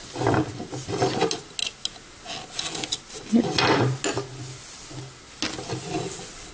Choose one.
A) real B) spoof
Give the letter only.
A